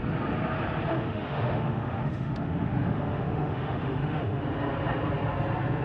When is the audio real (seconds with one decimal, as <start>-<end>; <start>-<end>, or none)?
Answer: 0.0-0.9; 4.4-5.8